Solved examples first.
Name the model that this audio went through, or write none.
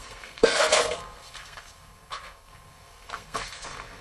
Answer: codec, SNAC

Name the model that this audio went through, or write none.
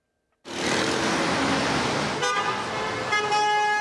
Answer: none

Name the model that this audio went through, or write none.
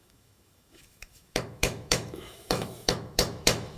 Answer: autoencoder, DAC-VAE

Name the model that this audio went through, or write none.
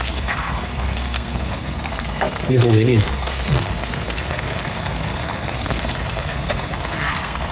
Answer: codec, SNAC